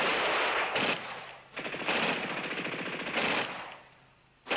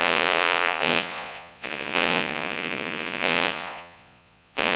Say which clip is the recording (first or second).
first